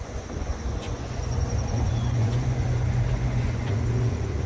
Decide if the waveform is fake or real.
fake